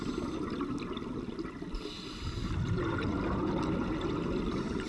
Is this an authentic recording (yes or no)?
yes